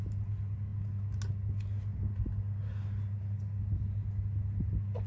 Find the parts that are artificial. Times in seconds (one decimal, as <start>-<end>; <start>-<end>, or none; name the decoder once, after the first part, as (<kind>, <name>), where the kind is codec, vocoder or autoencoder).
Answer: none